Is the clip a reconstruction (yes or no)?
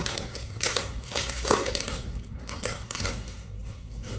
yes